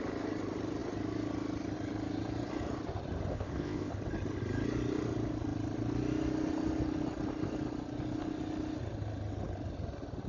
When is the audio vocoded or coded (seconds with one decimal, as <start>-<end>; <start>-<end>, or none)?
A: 3.3-3.9